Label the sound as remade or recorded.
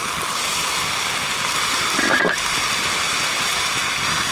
recorded